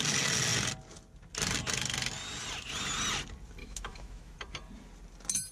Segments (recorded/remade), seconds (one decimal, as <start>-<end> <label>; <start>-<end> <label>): 0.0-3.6 recorded; 3.6-4.4 remade; 4.4-5.5 recorded